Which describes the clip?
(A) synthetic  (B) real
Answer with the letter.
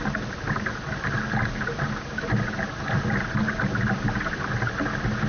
B